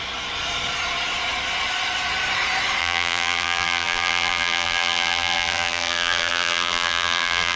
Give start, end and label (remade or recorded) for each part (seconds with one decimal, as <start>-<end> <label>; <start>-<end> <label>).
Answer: 0.0-2.8 recorded; 2.8-7.6 remade